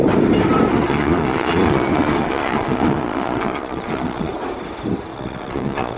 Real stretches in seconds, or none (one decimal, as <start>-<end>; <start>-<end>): 0.0-0.7; 4.3-5.1